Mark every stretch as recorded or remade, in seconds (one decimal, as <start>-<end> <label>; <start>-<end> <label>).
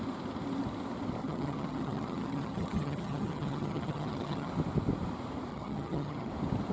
0.0-1.2 recorded; 1.2-4.5 remade; 4.5-5.5 recorded; 5.5-6.3 remade; 6.3-6.7 recorded